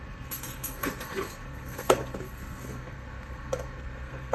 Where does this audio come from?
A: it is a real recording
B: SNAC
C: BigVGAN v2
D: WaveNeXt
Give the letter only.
B